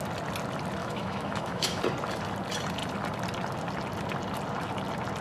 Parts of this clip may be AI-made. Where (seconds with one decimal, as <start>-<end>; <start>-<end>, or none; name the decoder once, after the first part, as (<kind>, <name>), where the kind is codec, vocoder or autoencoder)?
0.8-1.8 (autoencoder, DAC-VAE)